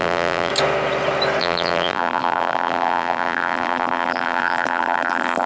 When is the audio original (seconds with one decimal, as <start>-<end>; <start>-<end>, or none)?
0.5-1.4